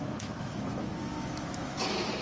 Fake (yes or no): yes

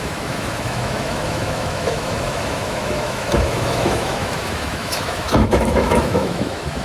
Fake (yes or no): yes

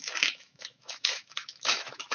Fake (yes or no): yes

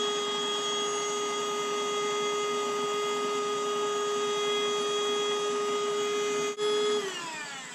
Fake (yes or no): no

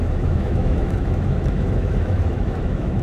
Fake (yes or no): yes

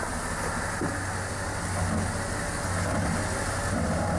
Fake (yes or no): no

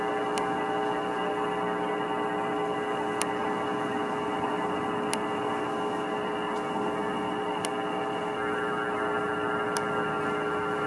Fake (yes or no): no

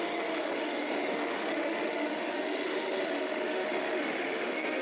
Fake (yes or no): yes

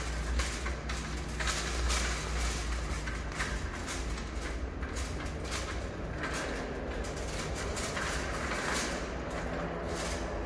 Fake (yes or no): no